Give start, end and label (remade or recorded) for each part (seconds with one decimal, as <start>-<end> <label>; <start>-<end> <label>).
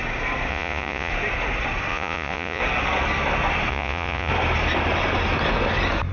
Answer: 0.0-0.5 recorded; 0.5-1.1 remade; 1.1-1.9 recorded; 1.9-2.6 remade; 2.6-3.7 recorded; 3.7-4.3 remade; 4.3-6.1 recorded